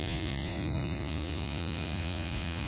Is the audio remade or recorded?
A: remade